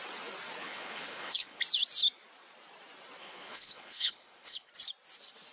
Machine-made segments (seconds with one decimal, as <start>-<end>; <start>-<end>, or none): 0.6-1.6; 3.2-4.7